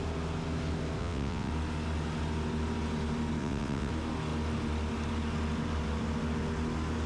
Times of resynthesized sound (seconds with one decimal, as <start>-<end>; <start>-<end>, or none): 1.0-1.5; 3.4-3.9